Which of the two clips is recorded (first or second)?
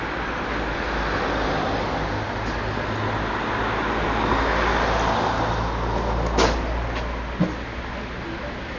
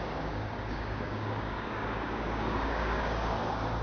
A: first